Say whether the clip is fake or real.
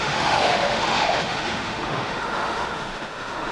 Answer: fake